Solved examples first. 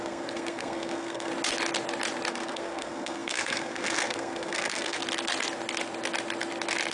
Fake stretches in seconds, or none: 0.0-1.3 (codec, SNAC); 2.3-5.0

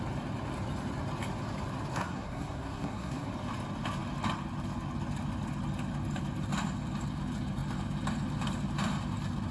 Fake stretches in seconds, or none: 1.9-3.3 (codec, SNAC)